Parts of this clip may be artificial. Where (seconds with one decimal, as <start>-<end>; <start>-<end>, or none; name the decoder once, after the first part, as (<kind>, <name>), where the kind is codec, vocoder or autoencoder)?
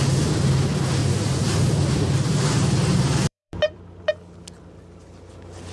1.0-4.1 (vocoder, BigVGAN v2)